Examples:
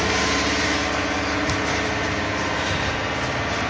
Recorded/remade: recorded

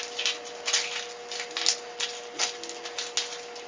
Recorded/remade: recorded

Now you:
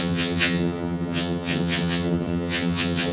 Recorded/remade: remade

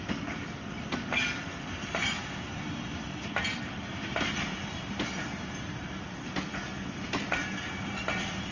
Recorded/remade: recorded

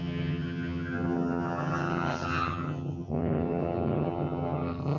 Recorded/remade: remade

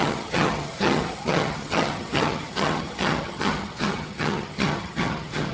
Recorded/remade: remade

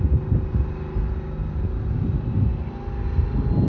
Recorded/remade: recorded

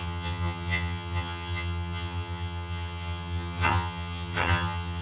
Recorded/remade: remade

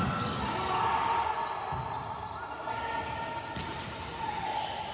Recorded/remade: recorded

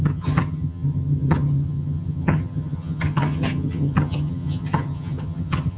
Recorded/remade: remade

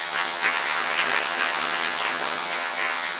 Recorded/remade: remade